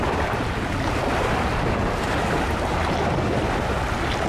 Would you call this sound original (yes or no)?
yes